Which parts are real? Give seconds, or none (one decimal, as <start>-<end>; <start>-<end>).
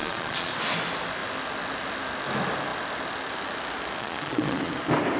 0.5-4.0; 4.7-5.2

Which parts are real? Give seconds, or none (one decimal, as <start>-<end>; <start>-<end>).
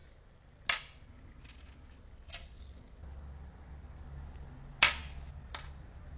0.0-6.2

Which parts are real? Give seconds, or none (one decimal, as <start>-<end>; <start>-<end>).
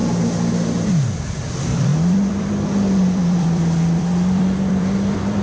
0.0-1.2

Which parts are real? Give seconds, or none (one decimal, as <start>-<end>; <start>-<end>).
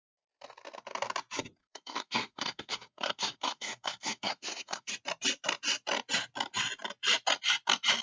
0.0-1.6; 4.9-8.0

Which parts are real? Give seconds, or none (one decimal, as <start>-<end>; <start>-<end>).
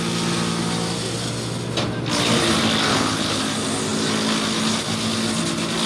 0.0-2.9; 3.4-5.9